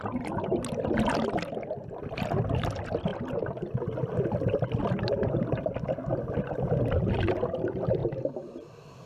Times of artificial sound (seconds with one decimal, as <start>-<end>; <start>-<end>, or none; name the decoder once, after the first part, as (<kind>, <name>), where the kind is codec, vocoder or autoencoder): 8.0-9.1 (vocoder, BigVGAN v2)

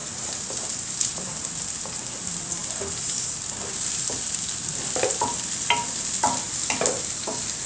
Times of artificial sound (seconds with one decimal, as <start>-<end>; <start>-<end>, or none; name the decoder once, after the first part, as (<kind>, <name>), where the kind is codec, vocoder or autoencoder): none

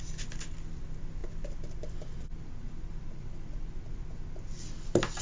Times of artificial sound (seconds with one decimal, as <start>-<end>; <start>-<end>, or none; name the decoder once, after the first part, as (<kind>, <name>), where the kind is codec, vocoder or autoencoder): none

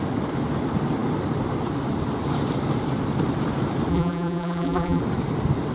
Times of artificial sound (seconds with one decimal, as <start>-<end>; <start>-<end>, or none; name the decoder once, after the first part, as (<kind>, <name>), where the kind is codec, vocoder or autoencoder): 3.9-5.0 (vocoder, BigVGAN v2)

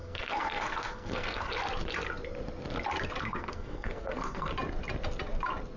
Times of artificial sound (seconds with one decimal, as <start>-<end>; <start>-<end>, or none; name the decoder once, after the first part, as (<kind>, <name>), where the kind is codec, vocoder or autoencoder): 0.0-1.5 (codec, SNAC); 3.2-4.5

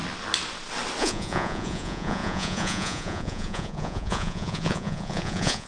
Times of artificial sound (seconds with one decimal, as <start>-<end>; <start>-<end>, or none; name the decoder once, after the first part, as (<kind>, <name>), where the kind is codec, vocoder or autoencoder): 1.0-5.7 (vocoder, Vocos)

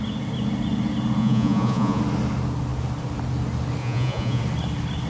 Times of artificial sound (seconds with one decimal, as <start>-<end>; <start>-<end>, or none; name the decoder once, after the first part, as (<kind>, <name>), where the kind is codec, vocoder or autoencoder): 1.2-2.0 (vocoder, Vocos); 3.8-4.4

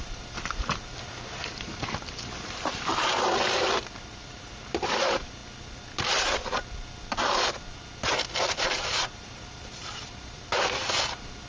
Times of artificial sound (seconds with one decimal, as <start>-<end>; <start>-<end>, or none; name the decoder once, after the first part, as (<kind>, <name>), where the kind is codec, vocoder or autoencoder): 0.0-0.8 (vocoder, BigVGAN v2); 2.1-3.1; 4.1-5.4; 8.5-10.5